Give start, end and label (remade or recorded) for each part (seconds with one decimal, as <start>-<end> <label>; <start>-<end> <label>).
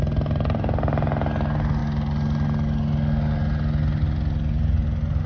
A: 0.0-5.3 recorded